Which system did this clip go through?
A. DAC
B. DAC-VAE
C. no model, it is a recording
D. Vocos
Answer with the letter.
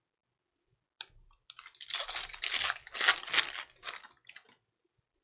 C